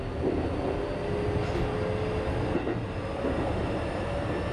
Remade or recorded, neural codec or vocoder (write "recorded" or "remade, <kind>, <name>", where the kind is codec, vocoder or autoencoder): recorded